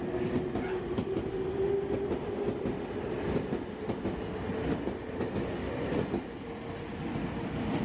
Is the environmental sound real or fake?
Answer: real